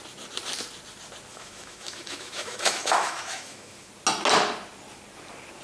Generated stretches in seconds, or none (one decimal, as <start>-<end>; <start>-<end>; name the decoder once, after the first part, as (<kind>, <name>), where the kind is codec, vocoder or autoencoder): 1.3-3.9 (autoencoder, DAC-VAE)